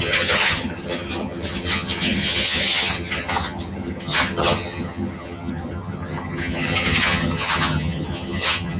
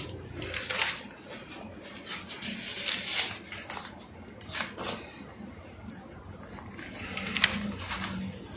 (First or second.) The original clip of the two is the second